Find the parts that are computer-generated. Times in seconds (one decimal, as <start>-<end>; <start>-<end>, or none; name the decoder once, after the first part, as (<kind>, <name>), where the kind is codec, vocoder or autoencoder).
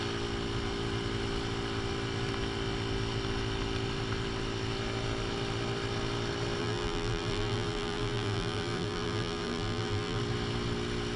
6.6-10.2 (vocoder, BigVGAN v2)